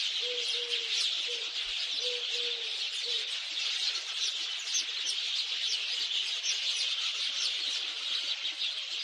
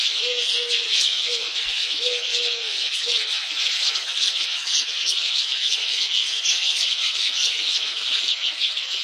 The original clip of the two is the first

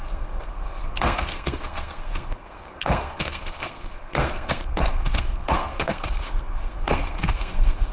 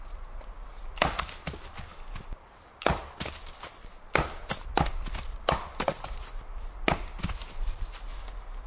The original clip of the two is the second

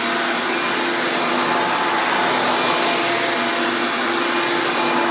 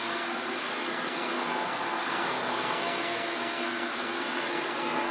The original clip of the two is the first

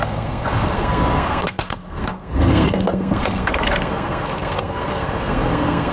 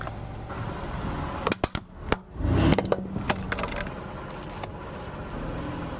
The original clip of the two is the second